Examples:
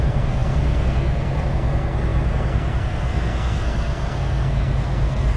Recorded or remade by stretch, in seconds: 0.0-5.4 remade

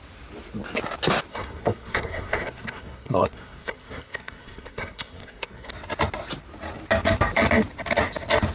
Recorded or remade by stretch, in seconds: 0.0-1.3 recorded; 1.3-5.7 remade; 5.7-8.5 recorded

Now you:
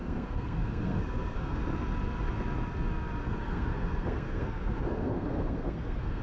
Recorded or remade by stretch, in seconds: 0.0-1.6 remade; 1.6-3.2 recorded; 3.2-6.2 remade

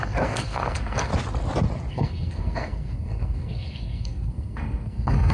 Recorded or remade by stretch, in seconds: 0.0-1.1 remade; 1.1-1.9 recorded; 1.9-5.3 remade

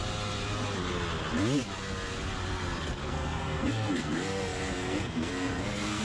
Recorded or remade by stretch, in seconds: 0.0-3.0 recorded; 3.0-6.0 remade